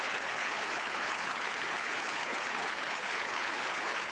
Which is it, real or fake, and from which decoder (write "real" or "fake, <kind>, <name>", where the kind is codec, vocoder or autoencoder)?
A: fake, codec, HILCodec